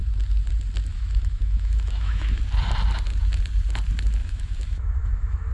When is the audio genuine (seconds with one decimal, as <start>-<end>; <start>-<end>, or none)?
0.0-0.9; 2.4-4.2